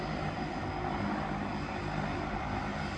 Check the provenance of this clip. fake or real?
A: real